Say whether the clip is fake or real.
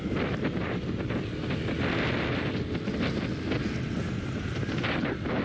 real